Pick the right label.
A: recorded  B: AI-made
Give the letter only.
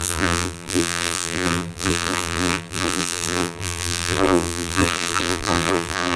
B